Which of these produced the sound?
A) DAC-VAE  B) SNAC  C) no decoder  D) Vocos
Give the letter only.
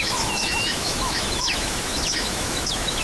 A